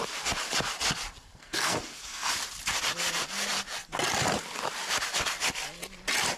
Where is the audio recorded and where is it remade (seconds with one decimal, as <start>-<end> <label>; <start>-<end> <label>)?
0.0-1.2 recorded; 1.2-2.3 remade; 2.3-6.4 recorded